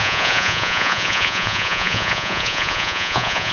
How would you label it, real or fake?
fake